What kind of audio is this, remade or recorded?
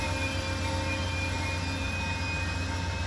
recorded